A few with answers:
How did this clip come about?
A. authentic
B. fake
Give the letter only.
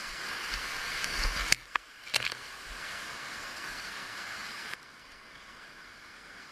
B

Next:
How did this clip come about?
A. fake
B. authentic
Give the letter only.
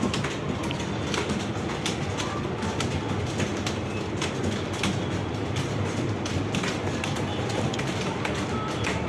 B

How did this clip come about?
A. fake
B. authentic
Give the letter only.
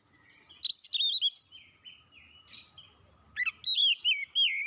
B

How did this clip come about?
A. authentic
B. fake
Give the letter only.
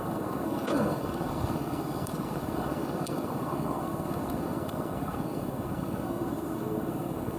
B